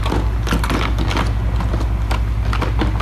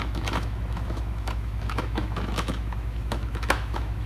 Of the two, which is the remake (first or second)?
second